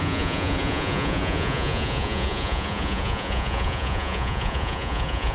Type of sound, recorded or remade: remade